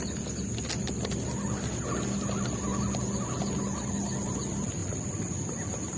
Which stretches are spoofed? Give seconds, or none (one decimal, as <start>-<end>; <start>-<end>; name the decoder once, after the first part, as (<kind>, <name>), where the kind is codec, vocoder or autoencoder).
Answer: none